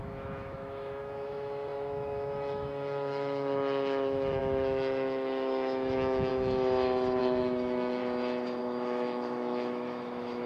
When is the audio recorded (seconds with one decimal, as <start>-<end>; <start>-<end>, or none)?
6.3-7.2; 8.0-8.6